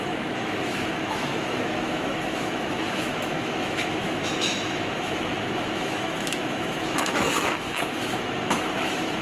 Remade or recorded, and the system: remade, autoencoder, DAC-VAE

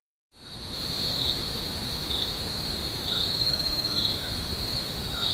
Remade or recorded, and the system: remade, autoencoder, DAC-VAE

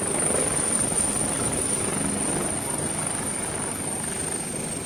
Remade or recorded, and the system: recorded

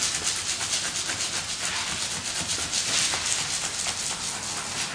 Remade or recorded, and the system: recorded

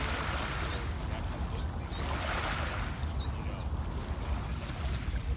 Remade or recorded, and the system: recorded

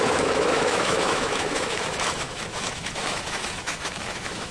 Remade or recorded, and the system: remade, autoencoder, DAC-VAE